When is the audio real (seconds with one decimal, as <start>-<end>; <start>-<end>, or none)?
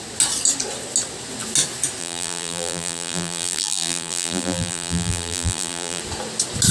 0.0-2.0; 6.0-6.7